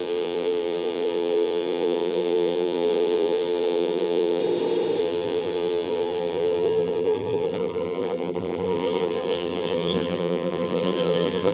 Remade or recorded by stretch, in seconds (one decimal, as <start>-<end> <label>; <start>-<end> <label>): 0.0-4.4 remade; 4.4-5.0 recorded; 5.0-11.5 remade